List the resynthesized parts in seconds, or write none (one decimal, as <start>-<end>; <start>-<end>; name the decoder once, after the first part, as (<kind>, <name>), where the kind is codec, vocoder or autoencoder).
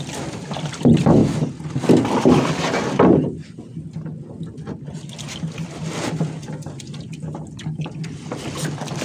0.0-1.2 (vocoder, BigVGAN v2); 1.8-3.7; 7.0-9.0